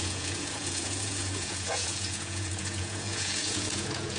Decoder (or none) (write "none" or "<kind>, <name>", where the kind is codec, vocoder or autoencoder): vocoder, Vocos